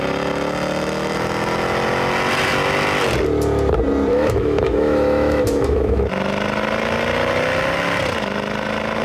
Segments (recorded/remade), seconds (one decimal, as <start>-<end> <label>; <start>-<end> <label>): 0.0-4.1 recorded; 4.1-6.1 remade; 6.1-9.0 recorded